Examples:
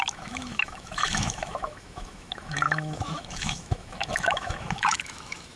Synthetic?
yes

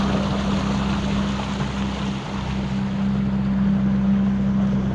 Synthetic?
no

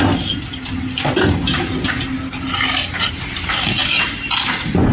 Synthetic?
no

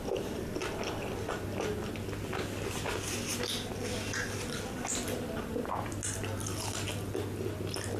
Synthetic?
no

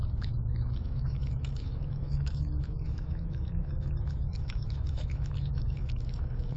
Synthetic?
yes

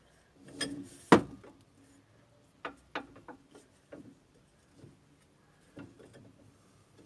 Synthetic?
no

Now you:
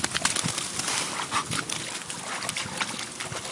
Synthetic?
no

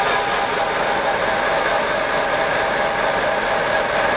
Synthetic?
no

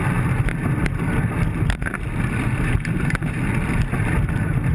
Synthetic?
no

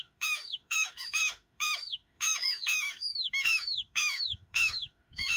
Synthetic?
yes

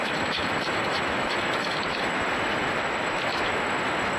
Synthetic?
yes